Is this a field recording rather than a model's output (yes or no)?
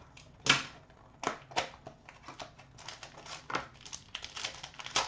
yes